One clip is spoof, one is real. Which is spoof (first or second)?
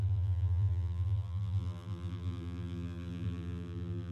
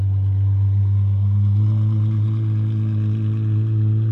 first